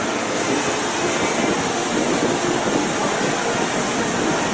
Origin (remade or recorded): recorded